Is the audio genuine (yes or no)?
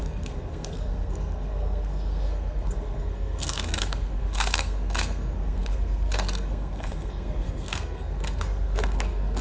no